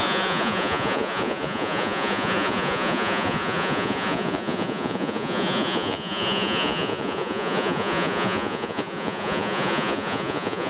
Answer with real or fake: fake